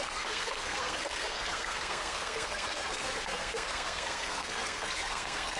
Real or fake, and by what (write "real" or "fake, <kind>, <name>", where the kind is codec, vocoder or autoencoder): fake, codec, SNAC